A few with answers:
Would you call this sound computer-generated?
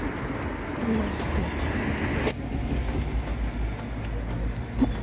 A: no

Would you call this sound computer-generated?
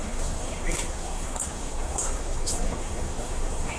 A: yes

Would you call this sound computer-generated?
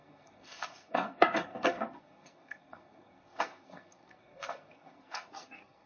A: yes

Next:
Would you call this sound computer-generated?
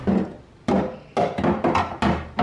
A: no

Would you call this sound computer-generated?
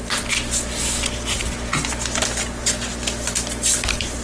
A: no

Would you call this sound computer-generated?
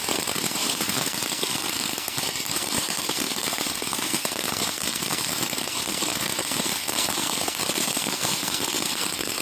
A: yes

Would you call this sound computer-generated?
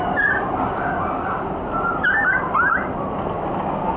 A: no